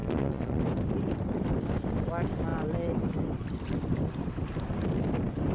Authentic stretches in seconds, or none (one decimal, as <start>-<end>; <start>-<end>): 0.6-5.5